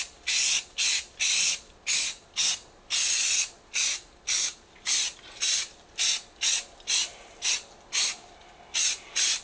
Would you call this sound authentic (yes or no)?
yes